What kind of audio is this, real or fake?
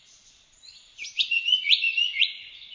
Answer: fake